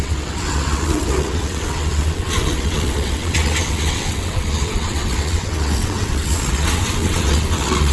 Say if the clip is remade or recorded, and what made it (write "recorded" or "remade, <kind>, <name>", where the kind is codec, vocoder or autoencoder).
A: remade, vocoder, WaveNeXt